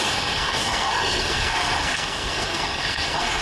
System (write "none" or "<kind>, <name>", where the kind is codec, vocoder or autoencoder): codec, SNAC